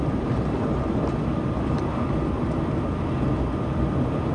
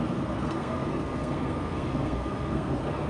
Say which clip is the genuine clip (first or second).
first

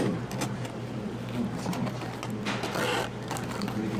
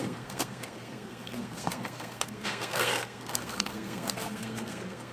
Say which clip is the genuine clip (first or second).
first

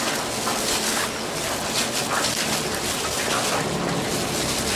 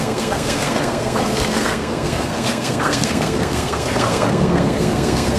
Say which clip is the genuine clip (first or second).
first